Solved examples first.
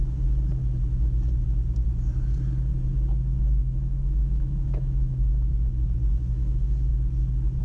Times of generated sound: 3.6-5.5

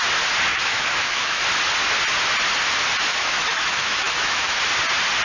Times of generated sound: 0.5-1.4; 3.1-4.6

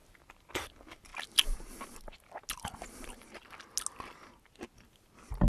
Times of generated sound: none

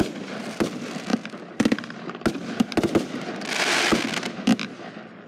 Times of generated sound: none

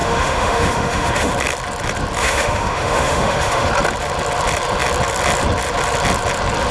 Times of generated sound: 0.0-1.3; 2.2-3.7